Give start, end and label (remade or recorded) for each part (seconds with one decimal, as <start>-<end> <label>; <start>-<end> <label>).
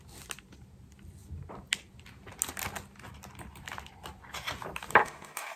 0.0-5.0 recorded; 5.0-5.6 remade